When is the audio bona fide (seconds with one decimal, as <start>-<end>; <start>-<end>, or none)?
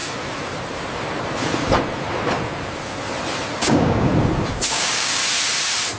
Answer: 0.0-3.6; 4.1-4.7; 5.2-6.0